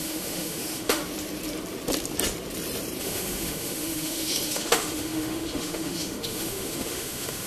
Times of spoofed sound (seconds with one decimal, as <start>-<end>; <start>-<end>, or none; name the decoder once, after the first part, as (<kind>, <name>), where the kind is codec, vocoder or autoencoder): 0.0-1.0 (autoencoder, DAC-VAE); 3.0-7.5